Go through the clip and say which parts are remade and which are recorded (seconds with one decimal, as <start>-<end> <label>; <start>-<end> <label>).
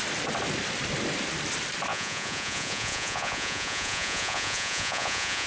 0.0-1.9 recorded; 1.9-5.5 remade